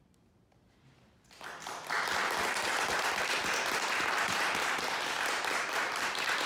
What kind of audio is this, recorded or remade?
recorded